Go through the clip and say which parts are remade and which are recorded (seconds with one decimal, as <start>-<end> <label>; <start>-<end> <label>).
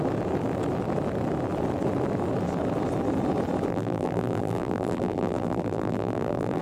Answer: 0.0-3.7 recorded; 3.7-6.6 remade